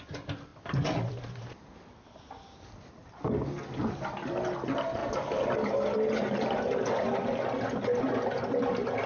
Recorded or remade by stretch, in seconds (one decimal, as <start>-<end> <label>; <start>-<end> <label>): 0.0-9.1 recorded